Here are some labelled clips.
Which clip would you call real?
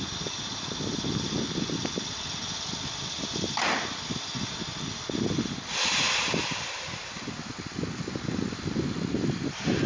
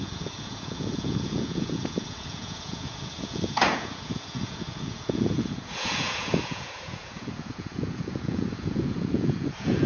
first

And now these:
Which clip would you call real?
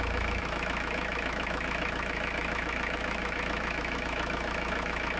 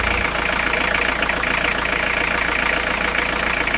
second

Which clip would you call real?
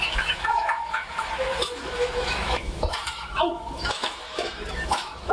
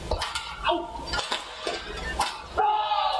second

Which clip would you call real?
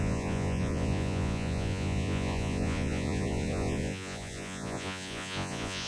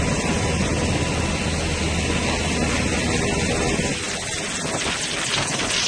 second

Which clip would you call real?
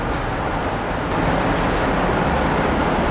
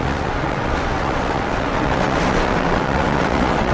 first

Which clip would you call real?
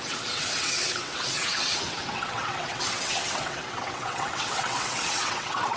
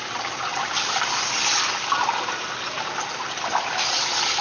second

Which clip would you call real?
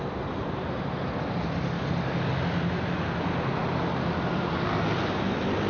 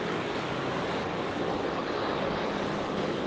first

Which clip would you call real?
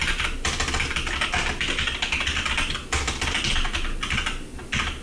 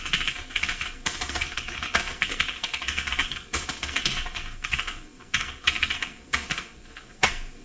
first